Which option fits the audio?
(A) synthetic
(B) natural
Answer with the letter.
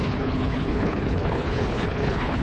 A